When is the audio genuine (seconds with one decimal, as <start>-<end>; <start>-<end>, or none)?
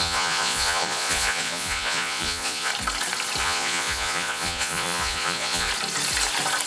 2.7-3.4; 5.7-6.7